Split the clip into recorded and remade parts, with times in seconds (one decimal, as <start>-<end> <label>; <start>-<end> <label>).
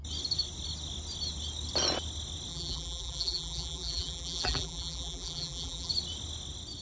0.0-2.5 recorded; 2.5-5.9 remade; 5.9-6.8 recorded